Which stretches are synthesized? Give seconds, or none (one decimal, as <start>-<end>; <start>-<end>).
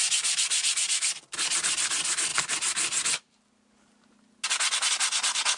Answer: none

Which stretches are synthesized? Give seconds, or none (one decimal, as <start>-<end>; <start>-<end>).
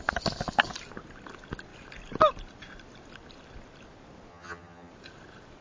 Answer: 4.3-4.9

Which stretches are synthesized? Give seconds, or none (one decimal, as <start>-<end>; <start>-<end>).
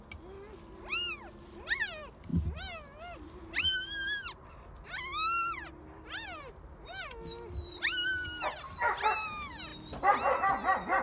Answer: none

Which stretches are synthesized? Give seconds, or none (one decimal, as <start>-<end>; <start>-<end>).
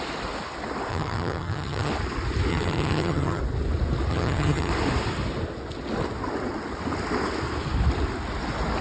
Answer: 0.9-1.9; 2.5-3.4; 4.1-4.7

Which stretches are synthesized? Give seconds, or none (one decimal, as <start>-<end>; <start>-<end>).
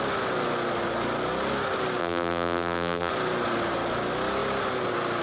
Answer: 2.0-3.1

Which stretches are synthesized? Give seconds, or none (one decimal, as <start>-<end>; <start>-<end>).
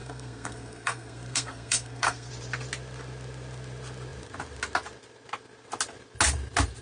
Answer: 0.0-2.3